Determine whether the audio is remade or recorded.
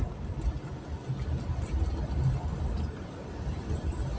recorded